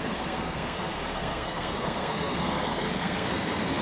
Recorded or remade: remade